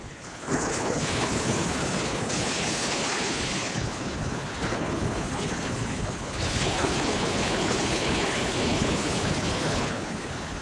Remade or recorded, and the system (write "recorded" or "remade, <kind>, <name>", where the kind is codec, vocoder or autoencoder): remade, codec, HILCodec